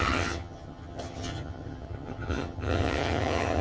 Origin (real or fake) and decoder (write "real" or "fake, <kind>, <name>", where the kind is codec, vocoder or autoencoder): fake, vocoder, HiFi-GAN